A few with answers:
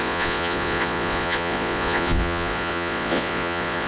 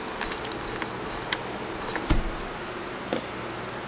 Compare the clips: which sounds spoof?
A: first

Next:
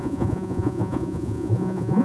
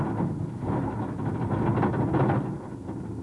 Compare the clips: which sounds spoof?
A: first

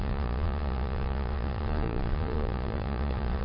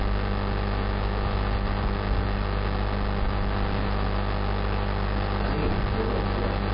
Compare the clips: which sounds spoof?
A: first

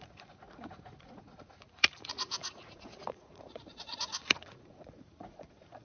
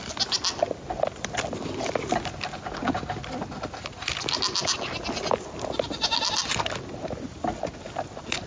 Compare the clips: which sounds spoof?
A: first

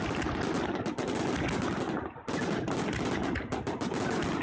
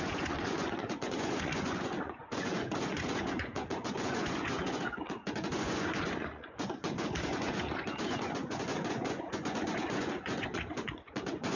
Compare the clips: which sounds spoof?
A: second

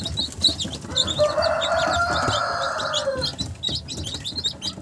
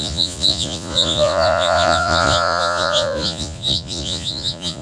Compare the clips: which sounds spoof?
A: second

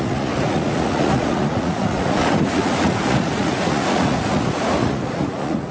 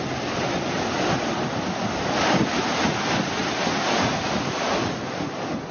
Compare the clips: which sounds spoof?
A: first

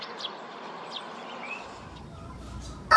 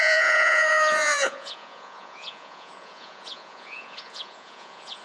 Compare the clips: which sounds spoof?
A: second